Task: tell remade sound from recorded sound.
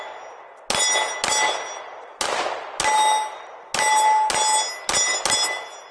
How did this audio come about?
recorded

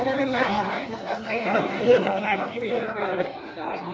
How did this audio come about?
remade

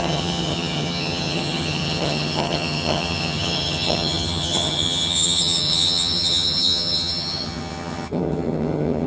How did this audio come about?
remade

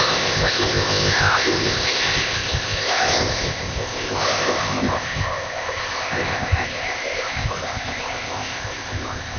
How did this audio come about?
remade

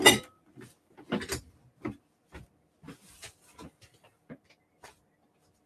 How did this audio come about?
recorded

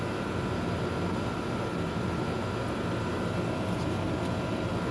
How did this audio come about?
recorded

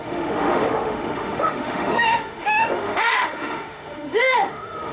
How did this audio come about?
remade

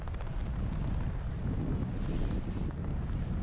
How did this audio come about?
recorded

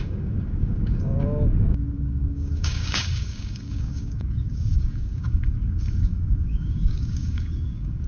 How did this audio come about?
remade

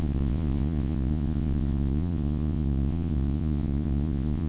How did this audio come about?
remade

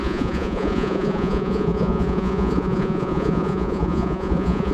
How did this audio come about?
remade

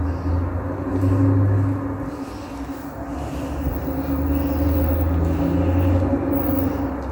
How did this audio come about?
recorded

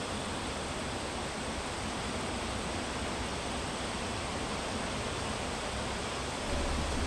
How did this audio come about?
recorded